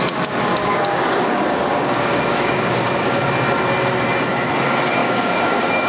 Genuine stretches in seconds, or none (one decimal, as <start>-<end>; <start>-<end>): 0.0-0.5; 3.2-5.0

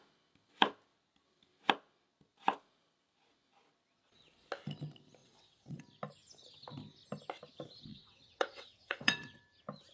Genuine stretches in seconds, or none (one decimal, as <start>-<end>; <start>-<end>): 0.0-5.2; 5.8-7.9; 9.4-9.9